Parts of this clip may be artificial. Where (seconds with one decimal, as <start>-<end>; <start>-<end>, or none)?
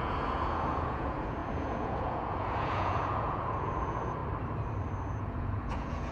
0.0-4.2; 5.1-6.1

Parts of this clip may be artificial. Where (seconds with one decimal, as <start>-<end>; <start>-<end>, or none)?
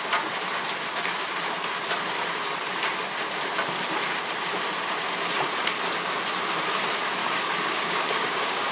7.2-8.7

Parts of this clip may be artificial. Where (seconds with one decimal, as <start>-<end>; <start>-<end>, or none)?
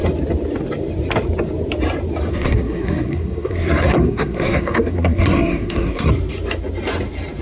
2.3-6.1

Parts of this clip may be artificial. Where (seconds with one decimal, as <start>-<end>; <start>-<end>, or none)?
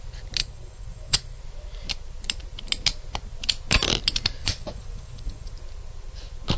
0.4-1.4; 4.4-5.5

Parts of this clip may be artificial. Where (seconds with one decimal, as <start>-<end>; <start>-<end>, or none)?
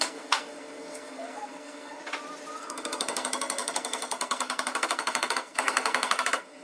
0.0-2.0; 2.6-6.6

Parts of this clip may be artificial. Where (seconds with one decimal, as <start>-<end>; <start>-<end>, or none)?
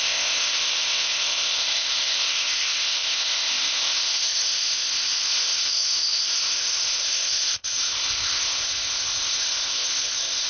0.0-10.5